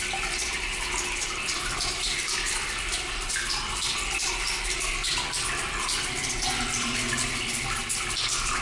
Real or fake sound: real